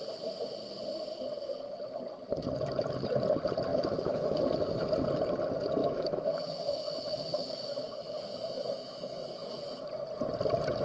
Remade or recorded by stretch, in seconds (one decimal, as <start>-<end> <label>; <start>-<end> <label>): 0.0-3.7 recorded; 3.7-4.5 remade; 4.5-5.8 recorded; 5.8-9.9 remade; 9.9-10.8 recorded

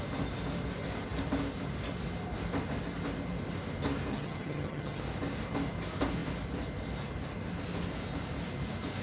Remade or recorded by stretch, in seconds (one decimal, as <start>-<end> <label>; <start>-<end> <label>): 0.0-4.1 recorded; 4.1-5.0 remade; 5.0-9.0 recorded